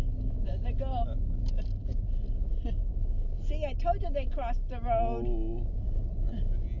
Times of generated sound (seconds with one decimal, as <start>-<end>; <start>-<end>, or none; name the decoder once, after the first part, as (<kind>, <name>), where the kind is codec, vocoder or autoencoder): none